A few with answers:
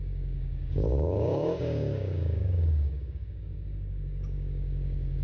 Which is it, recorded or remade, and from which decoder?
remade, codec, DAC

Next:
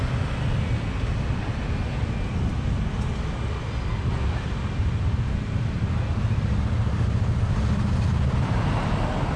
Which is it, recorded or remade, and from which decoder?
recorded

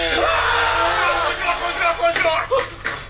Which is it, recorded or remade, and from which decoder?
recorded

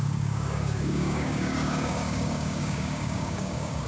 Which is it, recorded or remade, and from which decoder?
remade, codec, DAC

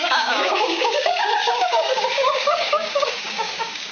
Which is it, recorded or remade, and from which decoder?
remade, codec, DAC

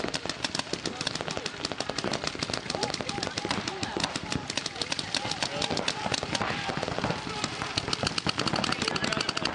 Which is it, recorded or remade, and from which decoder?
recorded